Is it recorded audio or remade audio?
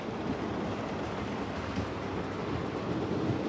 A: recorded